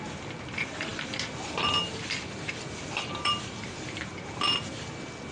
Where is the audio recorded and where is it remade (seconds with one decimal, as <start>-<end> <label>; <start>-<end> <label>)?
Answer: 0.0-0.9 recorded; 0.9-4.1 remade; 4.1-5.3 recorded